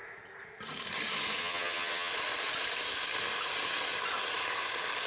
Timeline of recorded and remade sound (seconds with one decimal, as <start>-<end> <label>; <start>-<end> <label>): 0.0-1.4 recorded; 1.4-2.1 remade; 2.1-5.1 recorded

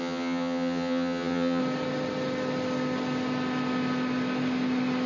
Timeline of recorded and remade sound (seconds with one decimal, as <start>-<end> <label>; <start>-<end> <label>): 0.0-1.6 remade; 1.6-5.1 recorded